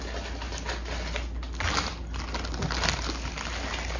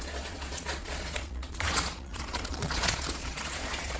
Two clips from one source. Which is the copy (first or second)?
second